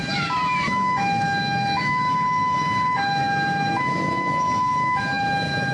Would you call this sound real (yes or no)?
no